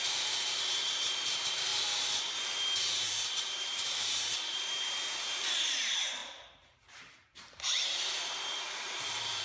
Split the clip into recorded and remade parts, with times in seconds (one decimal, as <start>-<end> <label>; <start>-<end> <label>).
0.0-9.4 remade